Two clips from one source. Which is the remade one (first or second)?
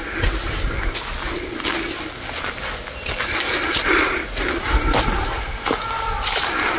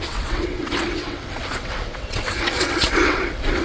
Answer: second